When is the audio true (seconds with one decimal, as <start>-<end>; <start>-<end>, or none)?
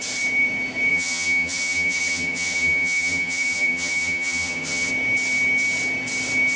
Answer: 0.0-0.9; 4.9-6.6